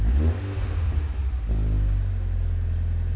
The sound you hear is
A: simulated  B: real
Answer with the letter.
B